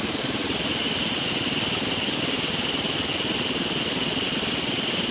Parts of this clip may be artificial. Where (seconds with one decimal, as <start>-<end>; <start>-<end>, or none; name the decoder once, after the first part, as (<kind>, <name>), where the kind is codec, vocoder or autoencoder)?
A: 0.8-1.3 (vocoder, BigVGAN v2)